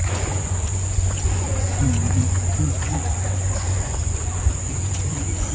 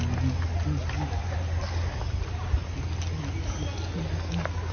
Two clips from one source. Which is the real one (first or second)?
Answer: second